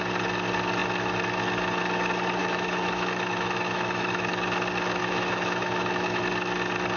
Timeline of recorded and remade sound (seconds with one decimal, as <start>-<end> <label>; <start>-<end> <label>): 0.0-2.4 recorded; 2.4-4.3 remade; 4.3-5.0 recorded; 5.0-6.2 remade; 6.2-7.0 recorded